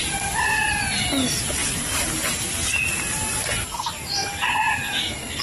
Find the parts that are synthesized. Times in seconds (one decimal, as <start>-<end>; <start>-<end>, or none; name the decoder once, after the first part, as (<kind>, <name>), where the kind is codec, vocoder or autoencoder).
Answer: none